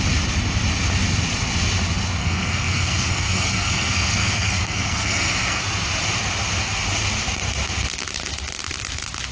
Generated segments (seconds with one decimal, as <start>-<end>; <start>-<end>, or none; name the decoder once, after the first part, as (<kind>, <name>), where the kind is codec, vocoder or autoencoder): 2.2-5.6 (codec, SNAC)